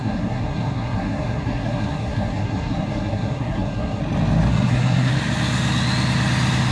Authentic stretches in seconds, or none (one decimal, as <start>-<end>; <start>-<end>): 4.0-4.5; 5.1-6.7